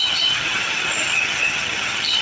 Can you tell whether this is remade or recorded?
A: remade